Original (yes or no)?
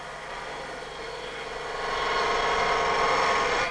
yes